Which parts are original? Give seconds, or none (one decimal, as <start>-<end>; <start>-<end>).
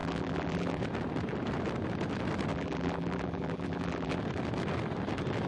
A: 0.8-2.5; 4.2-5.5